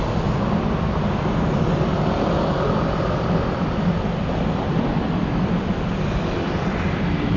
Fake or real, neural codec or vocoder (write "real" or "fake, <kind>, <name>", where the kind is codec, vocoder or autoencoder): fake, vocoder, BigVGAN v2